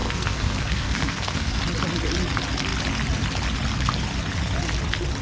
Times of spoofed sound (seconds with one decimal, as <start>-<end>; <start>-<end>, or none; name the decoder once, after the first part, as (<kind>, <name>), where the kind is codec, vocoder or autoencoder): 0.0-1.6 (codec, SNAC)